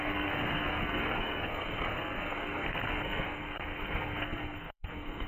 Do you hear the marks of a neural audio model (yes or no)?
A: yes